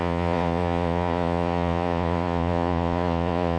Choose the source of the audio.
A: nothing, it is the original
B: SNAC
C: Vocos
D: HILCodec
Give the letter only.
C